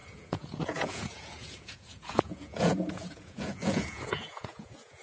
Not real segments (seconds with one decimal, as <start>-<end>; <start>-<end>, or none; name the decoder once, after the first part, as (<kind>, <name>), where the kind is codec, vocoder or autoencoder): 0.0-5.0 (vocoder, Vocos)